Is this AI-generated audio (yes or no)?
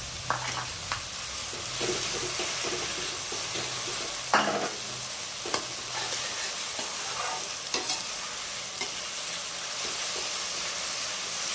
no